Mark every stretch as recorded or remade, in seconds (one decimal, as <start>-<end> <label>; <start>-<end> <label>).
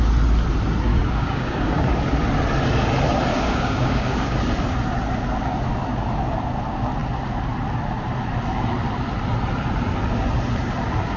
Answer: 0.0-0.9 recorded; 0.9-2.0 remade; 2.0-3.3 recorded; 3.3-4.5 remade; 4.5-11.2 recorded